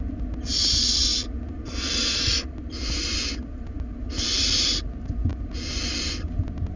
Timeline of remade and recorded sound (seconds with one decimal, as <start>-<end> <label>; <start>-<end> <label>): 0.0-6.8 recorded